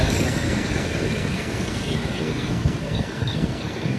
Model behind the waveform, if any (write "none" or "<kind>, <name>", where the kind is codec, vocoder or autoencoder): codec, SNAC